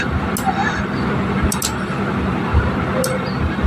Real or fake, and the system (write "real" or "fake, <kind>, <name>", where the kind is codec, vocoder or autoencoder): real